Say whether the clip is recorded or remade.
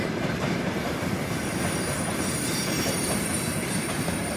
remade